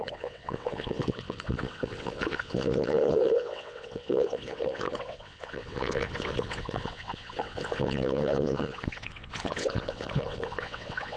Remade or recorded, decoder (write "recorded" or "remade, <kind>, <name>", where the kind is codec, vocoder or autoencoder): remade, vocoder, WaveNeXt